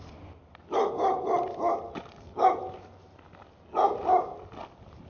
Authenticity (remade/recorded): recorded